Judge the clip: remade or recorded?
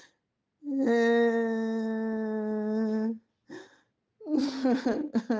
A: recorded